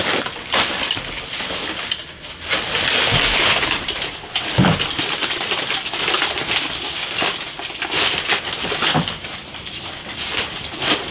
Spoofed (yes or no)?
no